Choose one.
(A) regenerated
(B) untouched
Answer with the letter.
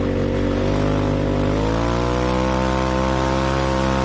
B